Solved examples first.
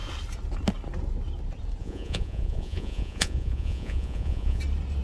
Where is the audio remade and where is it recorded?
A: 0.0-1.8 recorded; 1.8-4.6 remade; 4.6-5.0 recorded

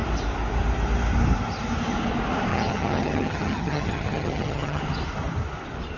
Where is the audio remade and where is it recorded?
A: 0.0-2.5 recorded; 2.5-4.8 remade; 4.8-6.0 recorded